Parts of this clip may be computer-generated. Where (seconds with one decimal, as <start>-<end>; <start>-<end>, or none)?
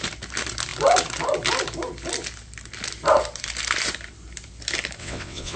5.0-5.6